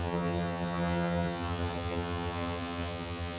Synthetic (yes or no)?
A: yes